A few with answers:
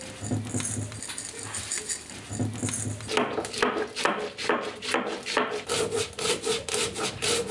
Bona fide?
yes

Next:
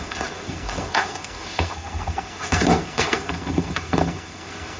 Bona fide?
no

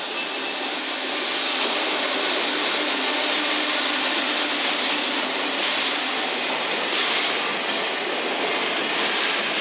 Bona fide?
yes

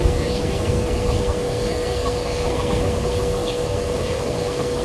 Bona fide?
no